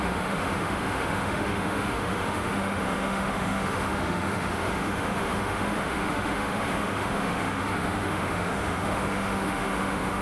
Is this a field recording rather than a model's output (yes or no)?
no